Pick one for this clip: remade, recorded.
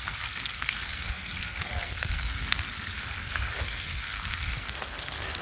remade